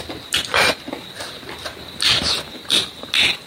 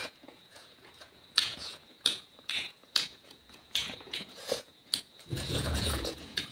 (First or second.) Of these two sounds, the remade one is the second